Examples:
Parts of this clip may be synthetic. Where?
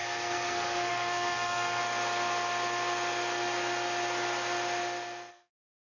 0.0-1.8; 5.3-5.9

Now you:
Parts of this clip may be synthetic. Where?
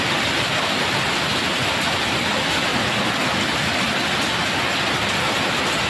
none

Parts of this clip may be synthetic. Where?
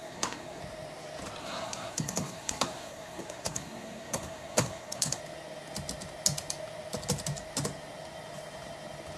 0.0-0.6; 1.4-5.2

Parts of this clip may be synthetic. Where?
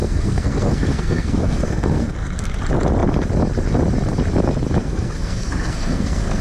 0.0-2.6; 4.8-6.4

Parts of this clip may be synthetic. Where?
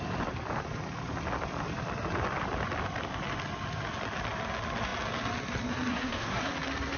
5.9-6.5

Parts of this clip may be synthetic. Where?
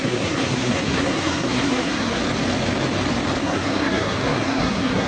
0.0-2.2; 3.4-5.1